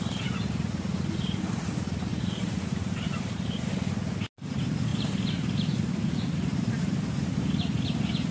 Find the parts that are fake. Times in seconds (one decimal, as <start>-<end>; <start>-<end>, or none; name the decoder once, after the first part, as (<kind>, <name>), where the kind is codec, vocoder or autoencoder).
2.1-3.6 (vocoder, BigVGAN v2); 4.9-7.4